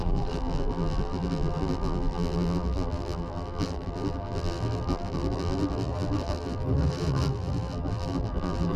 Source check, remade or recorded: remade